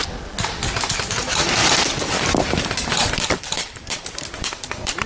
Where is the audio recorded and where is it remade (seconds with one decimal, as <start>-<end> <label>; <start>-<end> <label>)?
0.0-1.6 recorded; 1.6-5.1 remade